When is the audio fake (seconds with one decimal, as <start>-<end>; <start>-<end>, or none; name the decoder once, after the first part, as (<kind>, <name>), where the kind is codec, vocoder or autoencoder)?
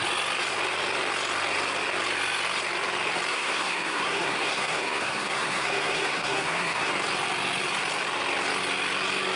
3.3-6.9 (codec, SNAC)